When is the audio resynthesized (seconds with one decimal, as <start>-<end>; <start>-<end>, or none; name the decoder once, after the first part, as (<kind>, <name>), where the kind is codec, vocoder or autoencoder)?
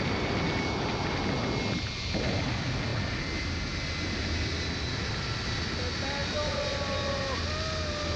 none